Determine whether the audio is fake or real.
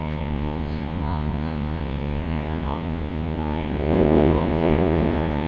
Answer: fake